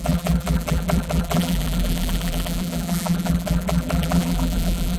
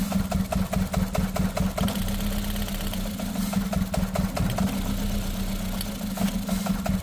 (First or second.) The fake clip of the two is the first